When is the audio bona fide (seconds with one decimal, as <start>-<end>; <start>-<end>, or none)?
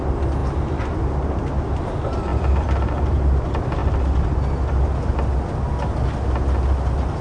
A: 0.0-2.3; 2.9-7.2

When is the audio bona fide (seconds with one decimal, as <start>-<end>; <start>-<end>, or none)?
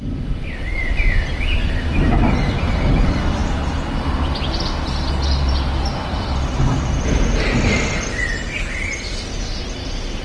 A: 0.0-10.2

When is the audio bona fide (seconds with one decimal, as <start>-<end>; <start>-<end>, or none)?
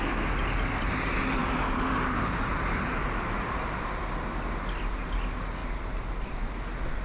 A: 0.0-1.4; 3.9-5.6; 6.5-7.0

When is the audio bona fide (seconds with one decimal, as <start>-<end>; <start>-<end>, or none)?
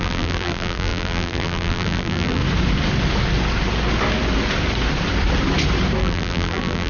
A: 2.4-6.0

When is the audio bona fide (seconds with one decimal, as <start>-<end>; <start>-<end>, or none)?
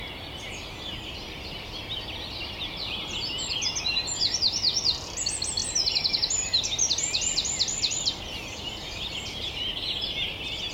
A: 0.0-10.7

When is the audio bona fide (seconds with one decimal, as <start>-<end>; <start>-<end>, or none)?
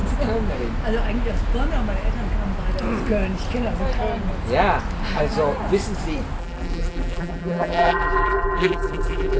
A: 0.0-6.4